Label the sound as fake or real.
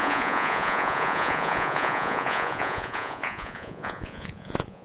fake